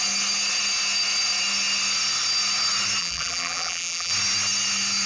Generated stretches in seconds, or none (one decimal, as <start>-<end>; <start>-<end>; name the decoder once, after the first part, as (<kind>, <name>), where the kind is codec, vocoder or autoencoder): 3.0-4.1 (vocoder, BigVGAN v2)